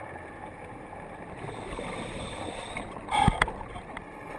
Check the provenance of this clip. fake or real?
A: real